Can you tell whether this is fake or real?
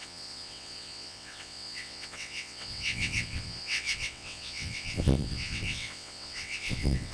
fake